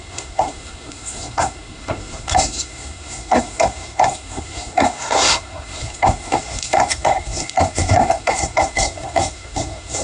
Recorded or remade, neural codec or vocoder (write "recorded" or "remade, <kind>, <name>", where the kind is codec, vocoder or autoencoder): remade, codec, SNAC